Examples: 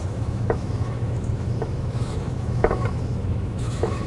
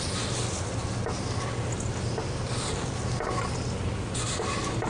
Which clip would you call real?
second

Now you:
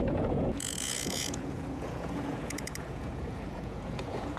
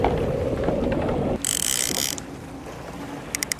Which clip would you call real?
second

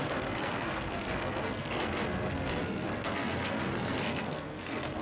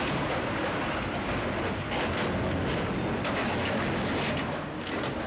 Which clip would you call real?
second